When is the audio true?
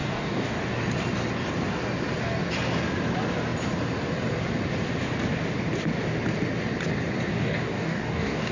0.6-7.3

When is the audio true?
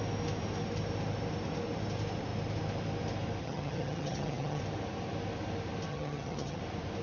0.0-3.4; 4.6-5.9; 6.6-7.0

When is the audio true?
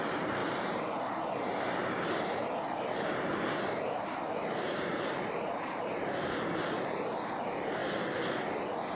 7.8-8.9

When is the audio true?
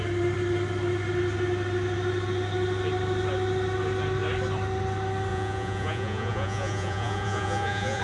0.0-5.3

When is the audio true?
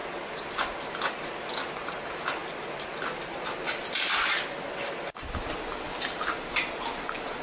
0.0-7.4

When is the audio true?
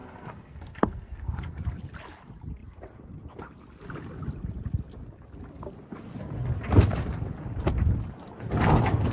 1.6-9.1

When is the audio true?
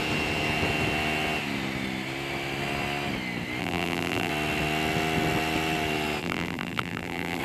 0.0-3.6; 4.3-6.2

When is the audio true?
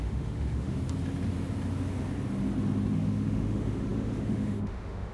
0.8-2.9